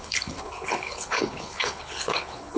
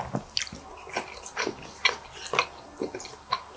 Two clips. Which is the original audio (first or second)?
second